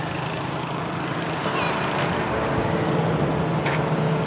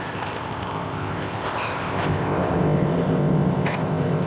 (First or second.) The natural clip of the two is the first